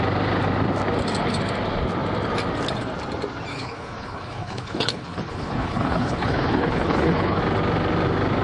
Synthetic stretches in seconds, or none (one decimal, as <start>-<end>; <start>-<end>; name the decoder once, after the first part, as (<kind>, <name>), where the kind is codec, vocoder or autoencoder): 3.5-7.4 (codec, HILCodec)